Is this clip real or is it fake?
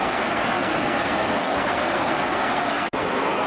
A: fake